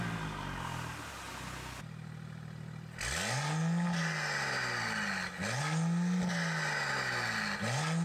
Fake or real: real